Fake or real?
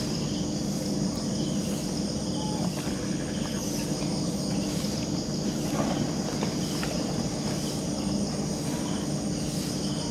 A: real